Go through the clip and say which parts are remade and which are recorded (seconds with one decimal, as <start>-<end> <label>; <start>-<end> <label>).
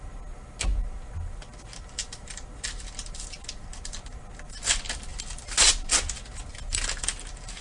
0.0-7.6 recorded